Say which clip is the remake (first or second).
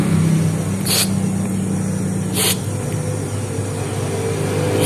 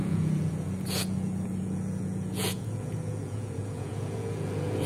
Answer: second